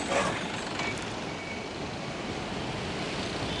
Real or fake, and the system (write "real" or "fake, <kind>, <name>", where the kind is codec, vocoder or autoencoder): real